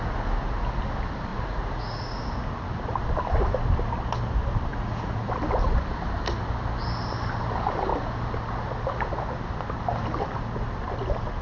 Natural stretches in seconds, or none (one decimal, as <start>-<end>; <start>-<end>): 0.0-1.3; 2.2-4.7; 5.3-11.4